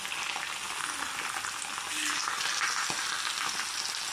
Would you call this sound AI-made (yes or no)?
no